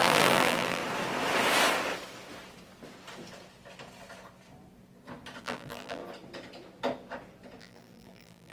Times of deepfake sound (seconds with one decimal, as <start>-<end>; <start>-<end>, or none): 0.0-0.8; 5.4-6.0; 7.6-8.5